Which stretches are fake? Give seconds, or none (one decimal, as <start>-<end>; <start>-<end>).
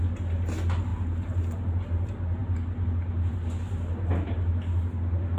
none